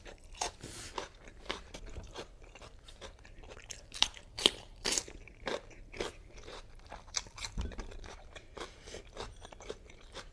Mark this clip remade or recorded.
remade